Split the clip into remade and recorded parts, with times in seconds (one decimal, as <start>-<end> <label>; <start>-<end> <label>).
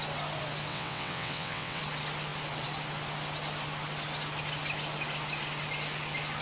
0.0-0.7 recorded; 0.7-1.8 remade; 1.8-6.4 recorded